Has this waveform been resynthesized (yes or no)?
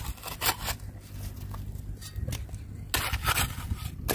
no